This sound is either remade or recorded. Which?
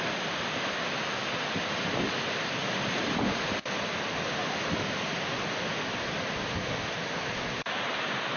recorded